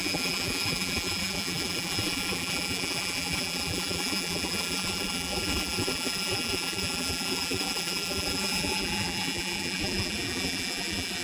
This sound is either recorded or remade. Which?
remade